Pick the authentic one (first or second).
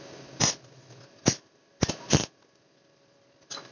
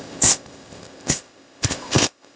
first